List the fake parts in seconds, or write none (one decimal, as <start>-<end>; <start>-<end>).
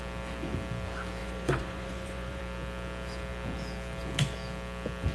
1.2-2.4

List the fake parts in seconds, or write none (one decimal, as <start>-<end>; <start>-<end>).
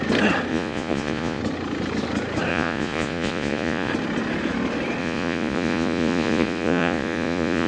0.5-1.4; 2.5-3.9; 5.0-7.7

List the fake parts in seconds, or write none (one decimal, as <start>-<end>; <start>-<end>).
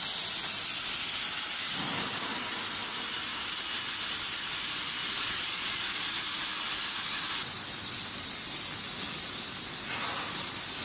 5.0-6.2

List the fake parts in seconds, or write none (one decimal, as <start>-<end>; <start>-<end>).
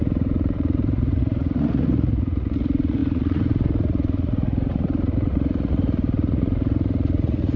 0.0-7.6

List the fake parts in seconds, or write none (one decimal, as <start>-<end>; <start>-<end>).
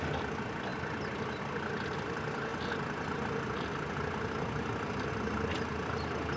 none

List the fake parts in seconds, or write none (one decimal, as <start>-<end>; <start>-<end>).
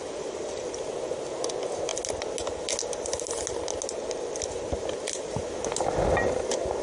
none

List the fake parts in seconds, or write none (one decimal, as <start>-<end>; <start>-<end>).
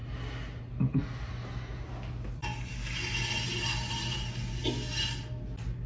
none